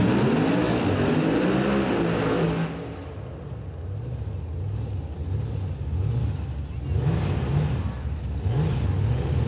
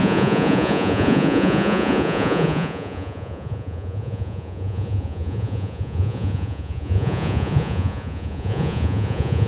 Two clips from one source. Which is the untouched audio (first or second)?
first